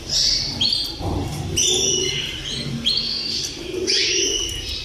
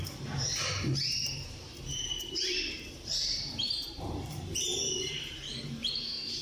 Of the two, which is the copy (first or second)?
second